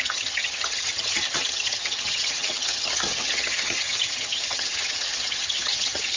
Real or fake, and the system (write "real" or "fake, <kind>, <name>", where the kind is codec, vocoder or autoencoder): fake, vocoder, HiFi-GAN